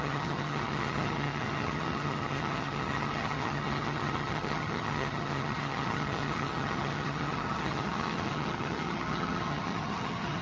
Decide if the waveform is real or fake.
fake